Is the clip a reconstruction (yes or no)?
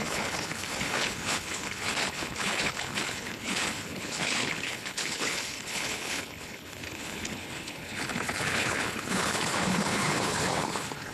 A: yes